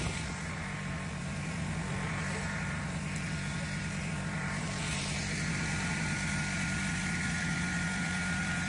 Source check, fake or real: fake